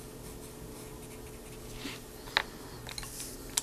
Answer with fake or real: real